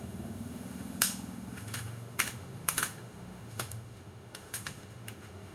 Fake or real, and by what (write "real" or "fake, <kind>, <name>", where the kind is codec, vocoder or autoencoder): fake, autoencoder, DAC-VAE